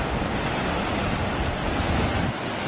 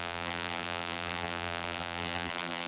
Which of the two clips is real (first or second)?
first